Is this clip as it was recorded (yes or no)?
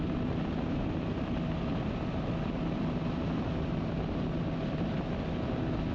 yes